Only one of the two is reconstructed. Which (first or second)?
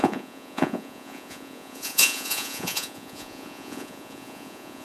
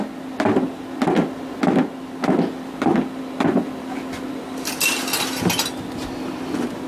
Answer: first